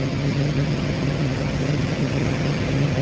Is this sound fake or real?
fake